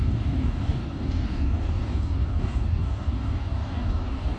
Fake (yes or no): yes